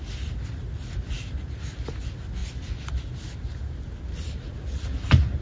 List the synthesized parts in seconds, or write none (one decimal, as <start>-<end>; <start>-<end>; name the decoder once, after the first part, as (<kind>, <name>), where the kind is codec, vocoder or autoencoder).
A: none